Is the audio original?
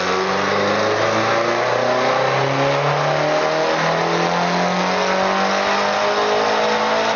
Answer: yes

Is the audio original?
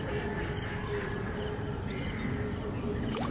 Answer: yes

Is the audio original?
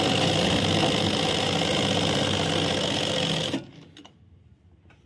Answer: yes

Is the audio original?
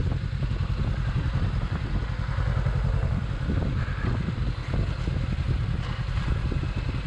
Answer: yes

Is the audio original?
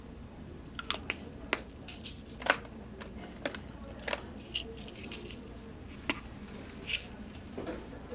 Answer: yes